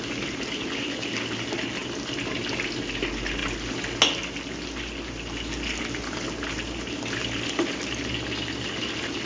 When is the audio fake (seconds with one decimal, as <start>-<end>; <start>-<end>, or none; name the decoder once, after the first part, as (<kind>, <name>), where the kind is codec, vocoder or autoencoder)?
none